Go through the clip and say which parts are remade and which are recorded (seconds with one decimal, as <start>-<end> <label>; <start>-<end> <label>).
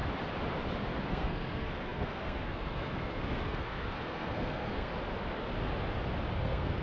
0.0-1.1 recorded; 1.1-4.9 remade; 4.9-6.3 recorded; 6.3-6.8 remade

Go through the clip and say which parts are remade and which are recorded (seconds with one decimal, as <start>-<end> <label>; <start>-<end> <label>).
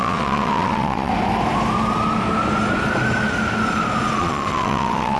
0.0-1.1 remade; 1.1-4.2 recorded; 4.2-5.2 remade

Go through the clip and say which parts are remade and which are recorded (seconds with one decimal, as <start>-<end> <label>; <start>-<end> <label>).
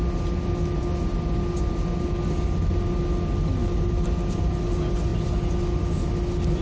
0.0-6.6 recorded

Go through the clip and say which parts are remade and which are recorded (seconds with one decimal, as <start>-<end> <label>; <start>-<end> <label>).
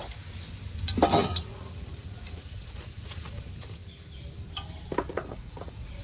0.0-1.2 recorded; 1.2-3.4 remade; 3.4-5.1 recorded; 5.1-6.0 remade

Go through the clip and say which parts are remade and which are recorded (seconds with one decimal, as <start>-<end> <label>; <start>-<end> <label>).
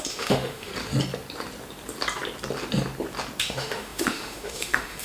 0.0-0.7 remade; 0.7-3.4 recorded; 3.4-5.0 remade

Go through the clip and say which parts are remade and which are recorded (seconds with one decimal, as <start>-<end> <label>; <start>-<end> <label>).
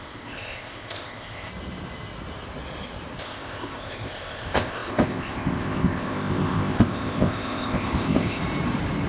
0.0-1.5 remade; 1.5-3.2 recorded; 3.2-8.4 remade; 8.4-9.1 recorded